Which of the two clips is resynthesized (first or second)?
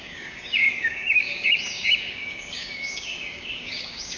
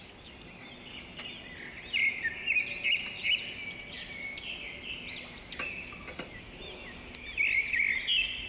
first